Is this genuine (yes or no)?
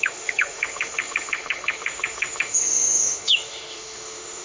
no